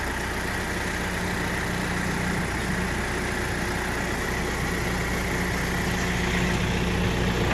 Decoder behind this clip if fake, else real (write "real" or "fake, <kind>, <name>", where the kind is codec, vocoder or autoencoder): real